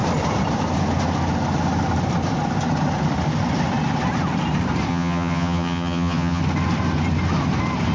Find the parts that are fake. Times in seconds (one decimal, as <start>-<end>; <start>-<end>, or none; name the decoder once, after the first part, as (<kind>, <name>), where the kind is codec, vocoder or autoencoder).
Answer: 4.9-6.4 (vocoder, HiFi-GAN)